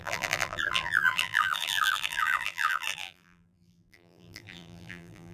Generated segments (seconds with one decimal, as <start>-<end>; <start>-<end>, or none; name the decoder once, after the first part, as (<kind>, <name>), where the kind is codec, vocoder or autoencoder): 0.0-5.3 (vocoder, BigVGAN v2)